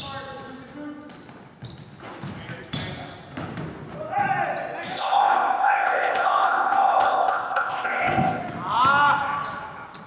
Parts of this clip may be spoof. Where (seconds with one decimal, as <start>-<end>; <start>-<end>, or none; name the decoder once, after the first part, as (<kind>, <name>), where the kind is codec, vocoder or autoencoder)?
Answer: 4.9-8.4 (codec, ZipCodec)